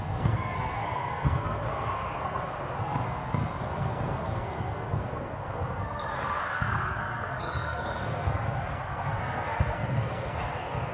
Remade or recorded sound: remade